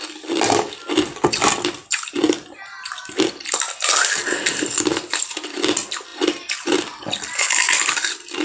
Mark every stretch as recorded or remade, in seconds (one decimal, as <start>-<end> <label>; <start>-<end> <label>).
0.0-8.4 recorded